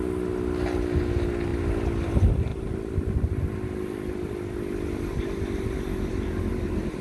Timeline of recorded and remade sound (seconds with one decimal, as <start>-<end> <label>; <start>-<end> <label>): 0.0-7.0 recorded